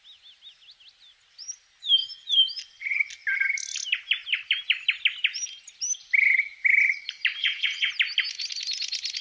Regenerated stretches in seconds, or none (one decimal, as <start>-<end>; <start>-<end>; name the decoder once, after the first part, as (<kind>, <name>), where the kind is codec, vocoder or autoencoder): 7.4-7.9 (vocoder, WaveNeXt)